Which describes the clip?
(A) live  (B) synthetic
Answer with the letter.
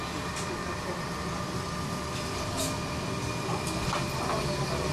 A